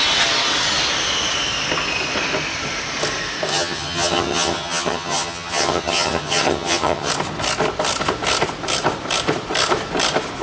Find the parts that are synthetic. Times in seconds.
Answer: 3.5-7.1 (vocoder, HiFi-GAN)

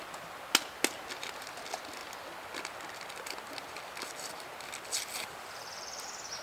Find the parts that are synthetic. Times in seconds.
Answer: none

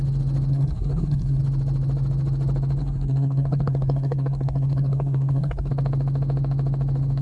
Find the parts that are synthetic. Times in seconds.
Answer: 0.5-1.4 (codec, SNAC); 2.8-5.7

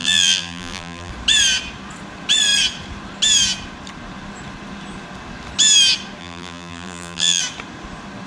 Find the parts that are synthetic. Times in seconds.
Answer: 0.0-1.1 (vocoder, BigVGAN v2); 6.2-7.4